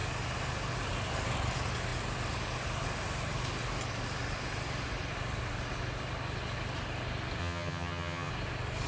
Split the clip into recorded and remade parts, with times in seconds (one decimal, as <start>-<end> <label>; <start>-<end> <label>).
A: 0.0-7.4 recorded; 7.4-8.3 remade; 8.3-8.9 recorded